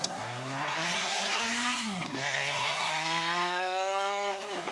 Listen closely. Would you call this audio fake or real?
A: fake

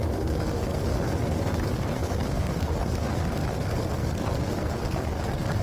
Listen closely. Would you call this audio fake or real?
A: fake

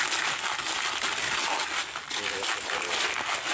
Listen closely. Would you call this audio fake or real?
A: real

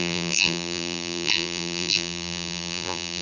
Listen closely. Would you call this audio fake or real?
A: fake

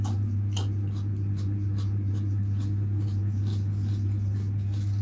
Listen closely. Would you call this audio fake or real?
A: real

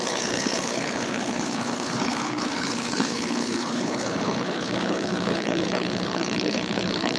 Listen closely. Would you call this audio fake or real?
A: fake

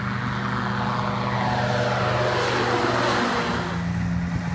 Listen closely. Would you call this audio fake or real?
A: real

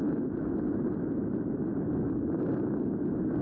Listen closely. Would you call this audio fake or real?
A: real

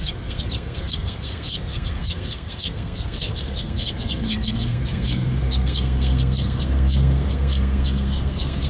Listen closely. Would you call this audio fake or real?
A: fake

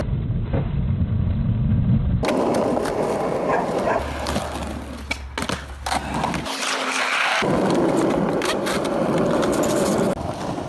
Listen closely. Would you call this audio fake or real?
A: real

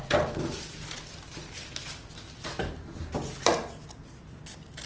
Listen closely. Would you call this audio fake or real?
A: real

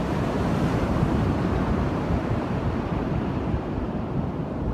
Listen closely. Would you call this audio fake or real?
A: fake